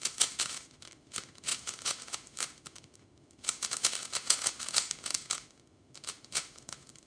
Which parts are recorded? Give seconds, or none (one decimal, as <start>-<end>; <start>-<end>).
none